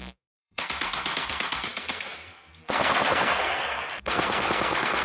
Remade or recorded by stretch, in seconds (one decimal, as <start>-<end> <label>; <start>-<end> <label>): 0.0-5.0 remade

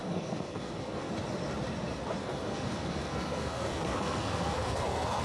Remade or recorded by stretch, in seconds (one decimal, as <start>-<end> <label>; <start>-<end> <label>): 0.0-1.1 remade; 1.1-2.2 recorded; 2.2-5.2 remade

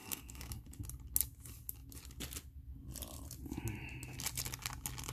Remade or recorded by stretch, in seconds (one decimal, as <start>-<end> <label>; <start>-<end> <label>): 0.0-0.5 remade; 0.5-5.1 recorded

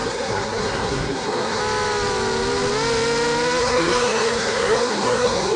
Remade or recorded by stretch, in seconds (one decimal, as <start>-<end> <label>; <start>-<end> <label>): 0.0-1.6 remade; 1.6-3.6 recorded; 3.6-5.6 remade

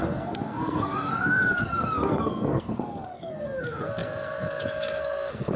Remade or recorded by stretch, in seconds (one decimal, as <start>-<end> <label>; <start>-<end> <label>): 0.0-5.6 remade

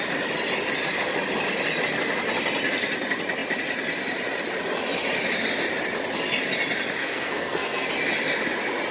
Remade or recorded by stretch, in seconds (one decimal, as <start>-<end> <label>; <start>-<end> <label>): 0.0-7.0 recorded; 7.0-7.9 remade; 7.9-8.9 recorded

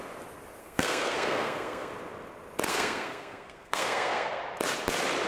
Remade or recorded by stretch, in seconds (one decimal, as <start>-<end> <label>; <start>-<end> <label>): 0.0-0.6 recorded; 0.6-1.9 remade; 1.9-2.7 recorded; 2.7-4.4 remade; 4.4-5.3 recorded

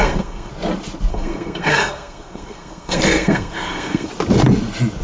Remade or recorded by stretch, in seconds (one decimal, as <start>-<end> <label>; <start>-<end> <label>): 0.0-0.5 remade; 0.5-1.1 recorded; 1.1-4.1 remade; 4.1-5.0 recorded